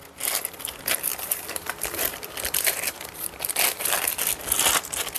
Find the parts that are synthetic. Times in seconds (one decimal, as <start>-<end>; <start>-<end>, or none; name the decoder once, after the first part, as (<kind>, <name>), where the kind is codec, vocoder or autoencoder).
1.1-4.2 (vocoder, BigVGAN v2)